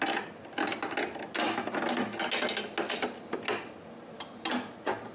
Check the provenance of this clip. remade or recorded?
recorded